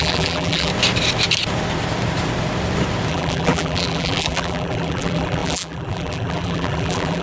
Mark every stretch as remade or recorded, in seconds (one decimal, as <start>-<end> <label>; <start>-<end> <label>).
0.0-0.7 remade; 0.7-3.1 recorded; 3.1-7.2 remade